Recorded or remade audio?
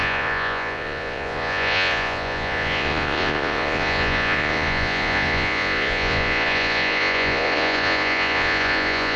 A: remade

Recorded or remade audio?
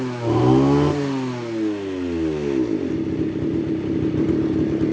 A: recorded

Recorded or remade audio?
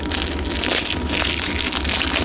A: recorded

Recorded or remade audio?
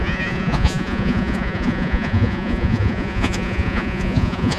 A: remade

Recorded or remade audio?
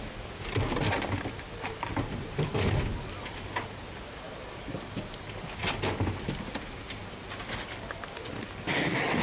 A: recorded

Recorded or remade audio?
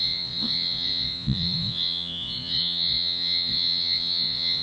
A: remade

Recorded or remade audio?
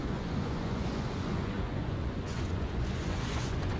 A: remade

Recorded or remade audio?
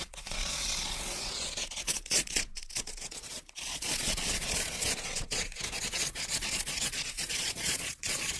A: remade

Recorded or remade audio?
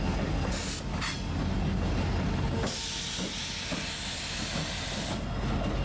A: recorded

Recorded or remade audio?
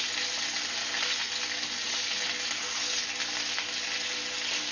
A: recorded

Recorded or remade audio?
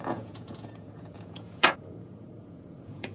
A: remade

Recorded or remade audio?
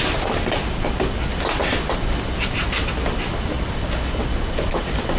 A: recorded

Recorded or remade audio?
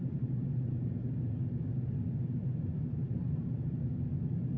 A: recorded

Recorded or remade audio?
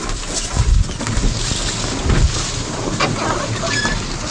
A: recorded